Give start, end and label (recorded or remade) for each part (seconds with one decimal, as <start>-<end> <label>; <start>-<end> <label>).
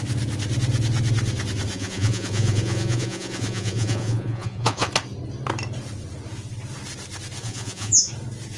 0.0-1.7 recorded; 1.7-4.9 remade; 4.9-7.4 recorded; 7.4-8.1 remade; 8.1-8.6 recorded